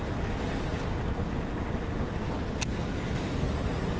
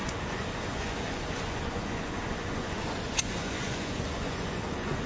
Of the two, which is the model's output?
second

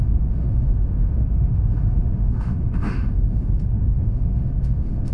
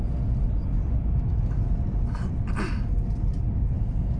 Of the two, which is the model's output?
first